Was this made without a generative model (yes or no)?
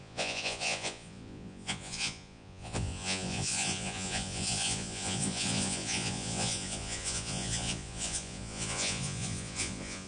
no